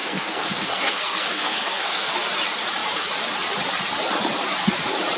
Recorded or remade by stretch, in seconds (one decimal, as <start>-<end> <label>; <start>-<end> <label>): 0.0-2.1 remade; 2.1-5.2 recorded